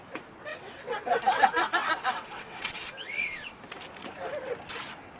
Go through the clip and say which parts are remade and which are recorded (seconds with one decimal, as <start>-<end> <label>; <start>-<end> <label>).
0.0-0.5 recorded; 0.5-3.6 remade; 3.6-5.2 recorded